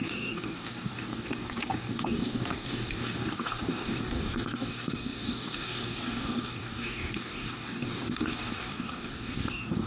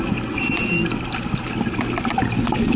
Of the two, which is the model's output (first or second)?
first